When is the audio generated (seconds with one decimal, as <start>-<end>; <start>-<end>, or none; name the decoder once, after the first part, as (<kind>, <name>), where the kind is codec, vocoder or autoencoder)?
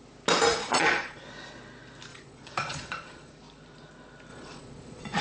0.5-1.2 (vocoder, Vocos); 2.1-3.3; 4.3-5.2